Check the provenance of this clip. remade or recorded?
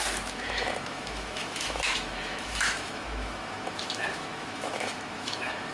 remade